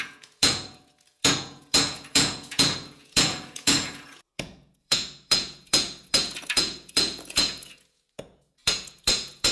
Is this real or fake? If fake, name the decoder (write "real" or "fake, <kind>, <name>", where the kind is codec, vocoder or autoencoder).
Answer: fake, vocoder, Vocos